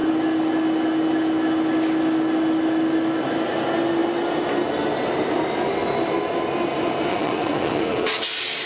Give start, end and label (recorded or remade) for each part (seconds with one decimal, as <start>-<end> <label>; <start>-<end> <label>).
0.0-7.1 recorded; 7.1-8.2 remade; 8.2-8.7 recorded